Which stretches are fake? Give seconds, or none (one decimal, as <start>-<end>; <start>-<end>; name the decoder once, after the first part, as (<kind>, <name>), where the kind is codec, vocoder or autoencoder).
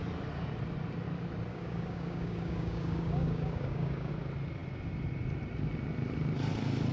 1.5-4.1 (codec, DAC)